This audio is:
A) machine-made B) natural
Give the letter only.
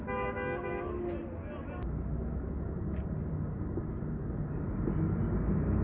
B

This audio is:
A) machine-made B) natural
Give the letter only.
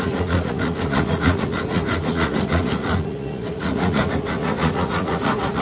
A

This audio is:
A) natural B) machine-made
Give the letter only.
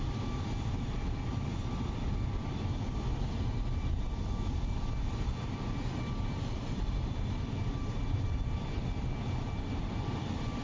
A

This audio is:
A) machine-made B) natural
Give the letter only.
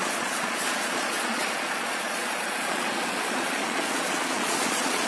A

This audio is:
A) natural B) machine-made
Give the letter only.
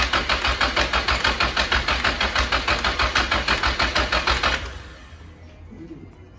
A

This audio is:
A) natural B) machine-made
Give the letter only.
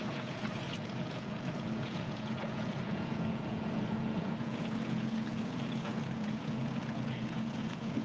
B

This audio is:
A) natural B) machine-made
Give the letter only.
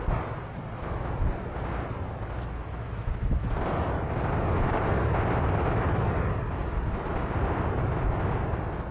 A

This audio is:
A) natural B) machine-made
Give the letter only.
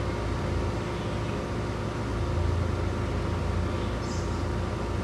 A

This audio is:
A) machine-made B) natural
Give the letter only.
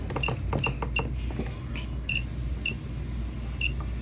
B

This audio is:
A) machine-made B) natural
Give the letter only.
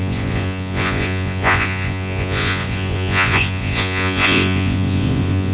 A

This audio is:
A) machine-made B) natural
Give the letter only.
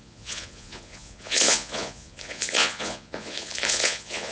A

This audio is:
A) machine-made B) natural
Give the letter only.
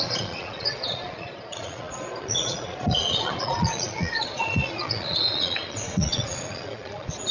A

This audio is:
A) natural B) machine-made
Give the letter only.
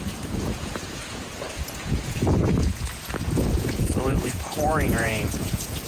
B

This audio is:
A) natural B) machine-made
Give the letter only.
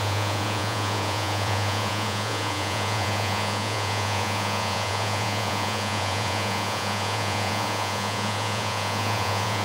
B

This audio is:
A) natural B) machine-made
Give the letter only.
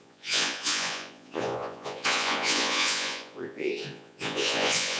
B